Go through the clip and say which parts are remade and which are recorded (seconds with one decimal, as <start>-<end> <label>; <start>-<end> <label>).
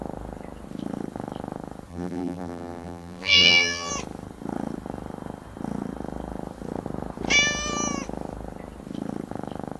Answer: 0.0-1.9 recorded; 1.9-3.9 remade; 3.9-9.8 recorded